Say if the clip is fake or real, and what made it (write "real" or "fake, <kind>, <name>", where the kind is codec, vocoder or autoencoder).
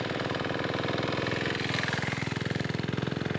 real